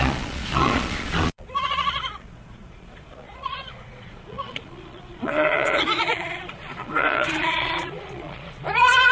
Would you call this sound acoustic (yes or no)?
no